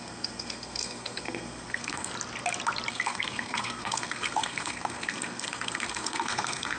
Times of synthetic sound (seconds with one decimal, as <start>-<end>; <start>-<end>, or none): 0.0-2.1; 2.9-6.8